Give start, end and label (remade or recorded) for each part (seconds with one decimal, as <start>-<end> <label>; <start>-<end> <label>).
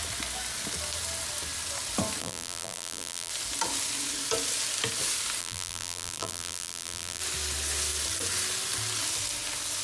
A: 0.0-2.2 recorded; 2.2-3.3 remade; 3.3-5.4 recorded; 5.4-7.2 remade; 7.2-9.8 recorded